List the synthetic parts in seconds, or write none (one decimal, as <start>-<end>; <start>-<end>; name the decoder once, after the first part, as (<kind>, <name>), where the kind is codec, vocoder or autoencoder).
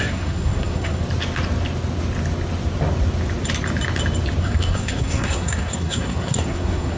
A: 0.0-1.0 (codec, SNAC); 4.4-7.0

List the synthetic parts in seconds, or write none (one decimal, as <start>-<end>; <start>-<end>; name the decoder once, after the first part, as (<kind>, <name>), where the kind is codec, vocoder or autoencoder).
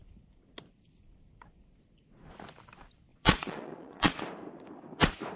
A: 3.1-4.2 (vocoder, Vocos)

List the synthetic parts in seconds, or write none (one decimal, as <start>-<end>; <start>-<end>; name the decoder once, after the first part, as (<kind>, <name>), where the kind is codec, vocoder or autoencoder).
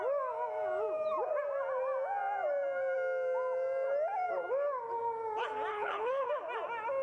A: 5.7-6.3 (codec, HILCodec)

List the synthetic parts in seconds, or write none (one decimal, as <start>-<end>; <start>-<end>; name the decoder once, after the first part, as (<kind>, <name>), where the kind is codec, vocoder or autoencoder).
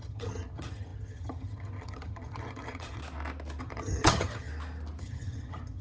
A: 0.0-3.0 (vocoder, HiFi-GAN); 3.6-4.5; 5.0-5.8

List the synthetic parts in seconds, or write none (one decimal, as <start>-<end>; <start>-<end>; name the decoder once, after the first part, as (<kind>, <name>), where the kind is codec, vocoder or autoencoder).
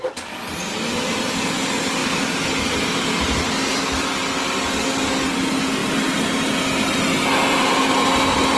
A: none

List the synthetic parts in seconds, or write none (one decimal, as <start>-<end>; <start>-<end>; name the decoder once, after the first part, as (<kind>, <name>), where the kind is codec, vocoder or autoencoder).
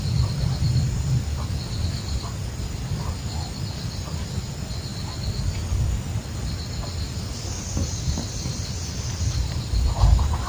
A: none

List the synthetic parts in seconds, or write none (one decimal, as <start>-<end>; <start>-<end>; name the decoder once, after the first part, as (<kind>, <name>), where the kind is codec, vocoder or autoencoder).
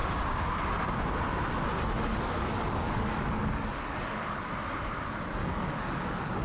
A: 2.1-4.5 (codec, DAC); 5.4-6.4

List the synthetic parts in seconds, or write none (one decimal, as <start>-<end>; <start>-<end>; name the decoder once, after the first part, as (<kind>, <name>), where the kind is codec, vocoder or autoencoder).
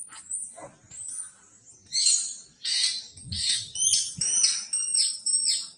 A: none